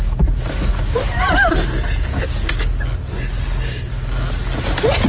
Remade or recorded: recorded